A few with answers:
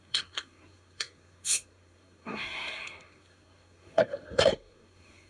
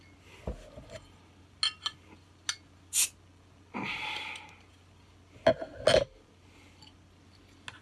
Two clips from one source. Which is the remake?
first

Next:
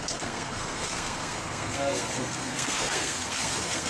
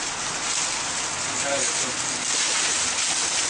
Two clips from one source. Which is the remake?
first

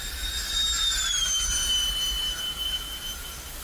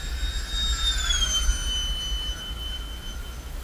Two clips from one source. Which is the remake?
first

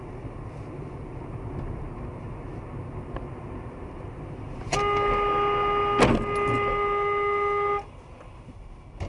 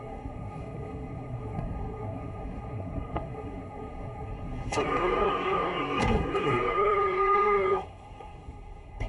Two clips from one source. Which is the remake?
second